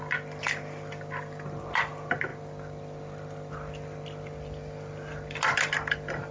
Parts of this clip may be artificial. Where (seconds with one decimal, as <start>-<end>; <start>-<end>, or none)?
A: none